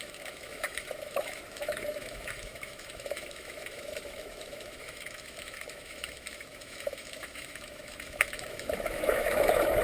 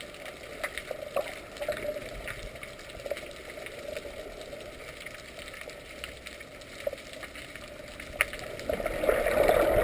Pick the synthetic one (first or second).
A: first